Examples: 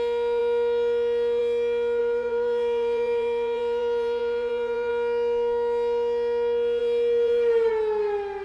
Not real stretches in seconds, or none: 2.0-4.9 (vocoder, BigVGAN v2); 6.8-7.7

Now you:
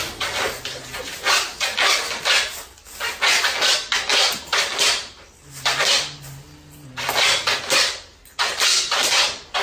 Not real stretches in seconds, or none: none